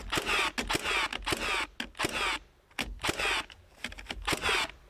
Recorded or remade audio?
recorded